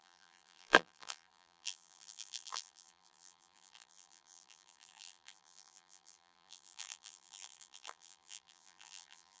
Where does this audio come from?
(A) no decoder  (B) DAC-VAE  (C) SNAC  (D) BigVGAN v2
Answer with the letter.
D